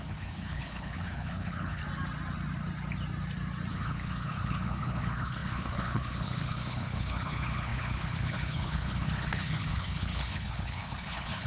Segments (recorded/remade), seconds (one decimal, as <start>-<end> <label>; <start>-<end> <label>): 0.0-1.8 remade; 1.8-3.7 recorded; 3.7-11.5 remade